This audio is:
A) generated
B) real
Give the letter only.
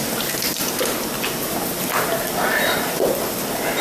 B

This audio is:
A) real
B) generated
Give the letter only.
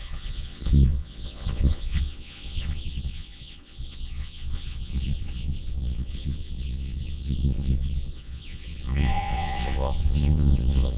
B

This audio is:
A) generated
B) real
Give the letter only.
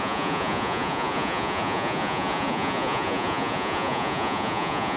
A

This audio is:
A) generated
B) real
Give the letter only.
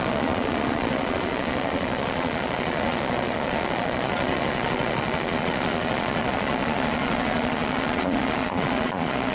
A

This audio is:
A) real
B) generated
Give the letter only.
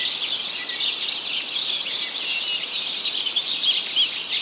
A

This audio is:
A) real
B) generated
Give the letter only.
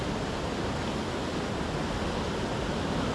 A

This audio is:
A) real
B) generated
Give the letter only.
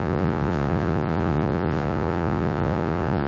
B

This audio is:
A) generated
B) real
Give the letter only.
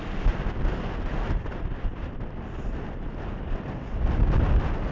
B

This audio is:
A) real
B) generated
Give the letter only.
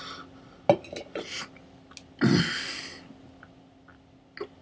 A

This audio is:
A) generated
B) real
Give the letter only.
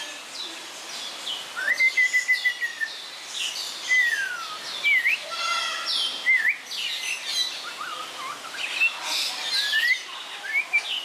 B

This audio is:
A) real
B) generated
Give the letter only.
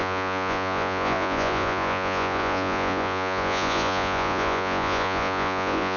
B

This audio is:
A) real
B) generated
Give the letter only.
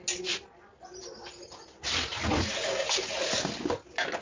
A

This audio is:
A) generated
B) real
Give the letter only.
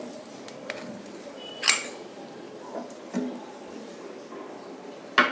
B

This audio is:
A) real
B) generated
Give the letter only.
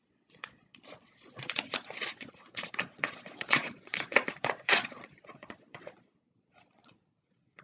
B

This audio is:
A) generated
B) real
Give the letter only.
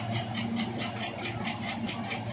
B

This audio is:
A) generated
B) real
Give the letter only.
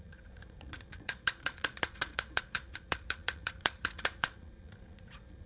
A